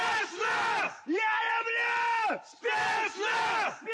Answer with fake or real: real